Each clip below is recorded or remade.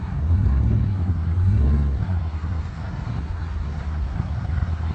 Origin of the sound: remade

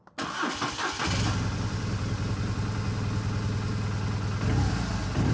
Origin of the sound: recorded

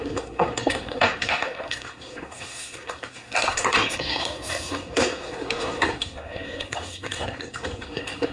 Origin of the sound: remade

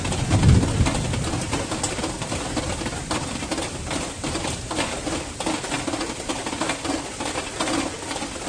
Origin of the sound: recorded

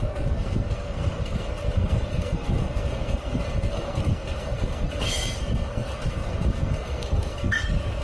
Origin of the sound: remade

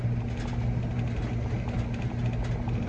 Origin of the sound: recorded